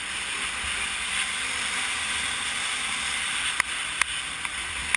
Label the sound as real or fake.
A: real